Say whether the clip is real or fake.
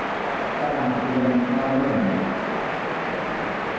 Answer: real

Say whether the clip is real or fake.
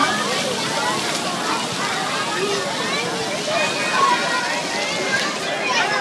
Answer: real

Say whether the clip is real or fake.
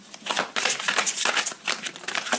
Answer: fake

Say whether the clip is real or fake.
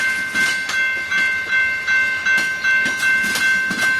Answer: real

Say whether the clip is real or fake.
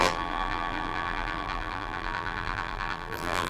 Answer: fake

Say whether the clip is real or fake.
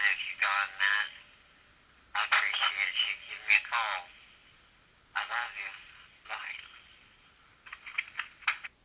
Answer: real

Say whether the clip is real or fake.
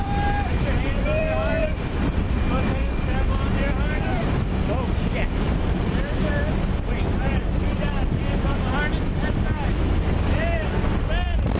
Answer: fake